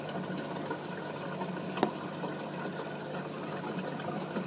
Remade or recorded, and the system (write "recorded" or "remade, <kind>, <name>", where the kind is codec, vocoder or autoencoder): recorded